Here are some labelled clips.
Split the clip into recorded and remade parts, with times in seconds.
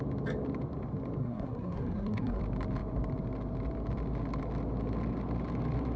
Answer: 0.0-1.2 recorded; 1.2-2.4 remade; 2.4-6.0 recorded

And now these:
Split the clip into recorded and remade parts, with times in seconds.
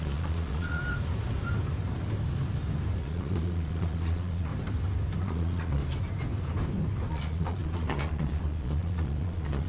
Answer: 0.0-0.8 remade; 0.8-3.0 recorded; 3.0-4.5 remade; 4.5-5.2 recorded; 5.2-5.8 remade; 5.8-7.1 recorded; 7.1-9.7 remade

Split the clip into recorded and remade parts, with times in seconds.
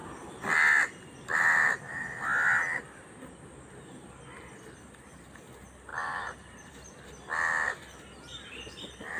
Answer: 0.0-5.9 recorded; 5.9-6.7 remade; 6.7-9.2 recorded